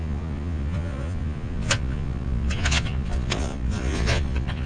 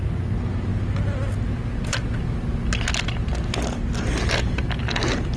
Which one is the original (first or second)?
second